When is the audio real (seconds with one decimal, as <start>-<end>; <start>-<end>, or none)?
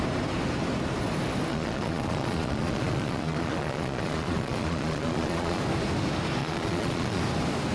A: 0.0-1.5; 5.6-6.4; 7.2-7.7